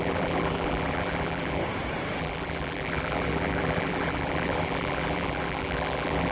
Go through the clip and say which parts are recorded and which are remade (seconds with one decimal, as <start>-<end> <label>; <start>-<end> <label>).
0.0-1.6 remade; 1.6-2.2 recorded; 2.2-6.3 remade